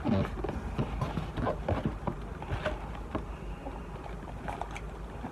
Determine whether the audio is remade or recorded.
recorded